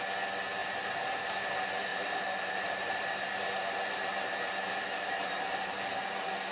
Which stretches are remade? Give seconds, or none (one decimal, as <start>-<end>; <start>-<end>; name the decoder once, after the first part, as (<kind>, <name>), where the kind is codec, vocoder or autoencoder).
0.6-1.5 (vocoder, BigVGAN v2); 1.9-5.8